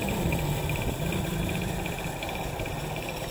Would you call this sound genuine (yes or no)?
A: no